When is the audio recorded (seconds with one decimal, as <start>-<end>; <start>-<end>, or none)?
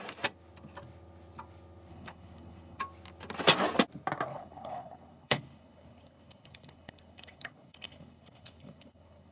0.0-1.9; 2.8-4.3